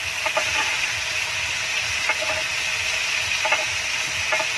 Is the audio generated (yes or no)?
no